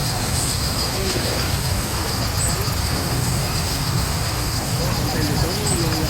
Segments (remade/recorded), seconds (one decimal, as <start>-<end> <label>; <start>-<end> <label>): 0.0-2.2 remade; 2.2-2.8 recorded; 2.8-4.8 remade; 4.8-6.1 recorded